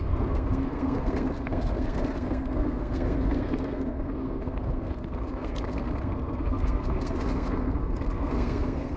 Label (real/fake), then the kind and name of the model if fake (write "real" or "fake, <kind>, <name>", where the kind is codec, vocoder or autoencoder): fake, codec, SNAC